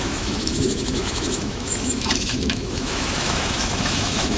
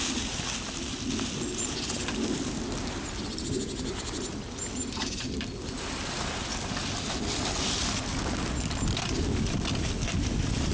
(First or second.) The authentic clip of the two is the second